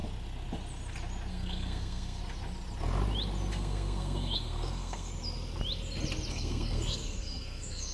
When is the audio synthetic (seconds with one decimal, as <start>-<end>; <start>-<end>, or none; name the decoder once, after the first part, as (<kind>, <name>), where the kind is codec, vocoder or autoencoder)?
1.3-2.2 (codec, SNAC); 3.5-5.1; 6.3-7.9